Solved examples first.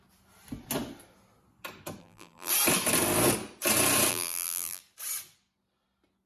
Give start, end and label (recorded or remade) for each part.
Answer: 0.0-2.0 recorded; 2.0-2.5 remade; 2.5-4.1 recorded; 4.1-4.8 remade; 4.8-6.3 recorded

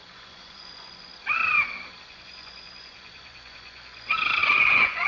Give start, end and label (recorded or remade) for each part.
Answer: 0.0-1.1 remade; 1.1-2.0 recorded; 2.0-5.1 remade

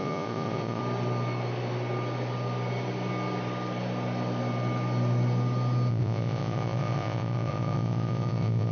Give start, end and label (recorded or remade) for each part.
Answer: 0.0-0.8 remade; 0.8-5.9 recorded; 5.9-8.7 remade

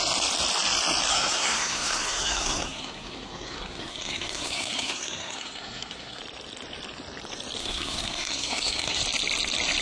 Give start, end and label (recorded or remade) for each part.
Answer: 0.0-1.1 recorded; 1.1-6.2 remade; 6.2-7.6 recorded; 7.6-9.0 remade; 9.0-9.8 recorded

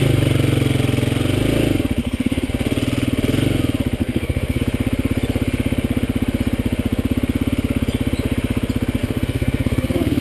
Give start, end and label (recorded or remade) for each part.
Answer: 0.0-2.0 recorded; 2.0-2.5 remade; 2.5-4.0 recorded; 4.0-4.6 remade; 4.6-9.0 recorded; 9.0-10.2 remade

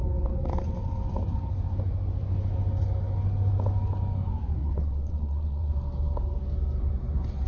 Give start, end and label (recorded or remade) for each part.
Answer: 0.0-4.6 recorded; 4.6-5.7 remade; 5.7-7.5 recorded